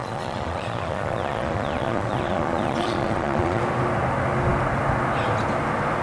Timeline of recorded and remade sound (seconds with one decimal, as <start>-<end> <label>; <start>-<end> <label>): 0.0-3.6 remade; 3.6-6.0 recorded